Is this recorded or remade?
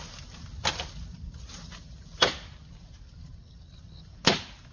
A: recorded